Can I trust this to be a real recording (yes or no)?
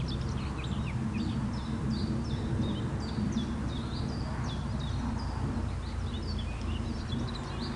yes